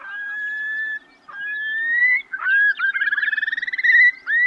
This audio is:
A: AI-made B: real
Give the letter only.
B